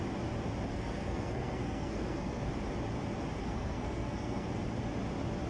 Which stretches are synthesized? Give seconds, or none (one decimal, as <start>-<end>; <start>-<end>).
0.7-2.5; 3.4-4.5